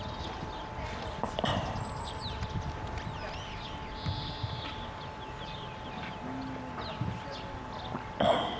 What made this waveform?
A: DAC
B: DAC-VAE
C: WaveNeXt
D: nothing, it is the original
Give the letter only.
D